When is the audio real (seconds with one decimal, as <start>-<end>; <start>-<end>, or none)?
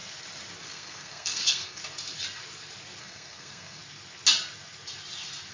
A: 0.0-0.6; 1.8-3.0; 3.8-5.5